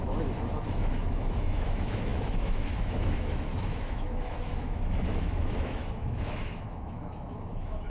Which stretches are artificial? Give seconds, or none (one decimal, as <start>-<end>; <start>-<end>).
0.0-7.9